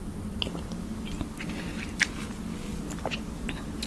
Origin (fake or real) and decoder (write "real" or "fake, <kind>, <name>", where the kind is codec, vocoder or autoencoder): real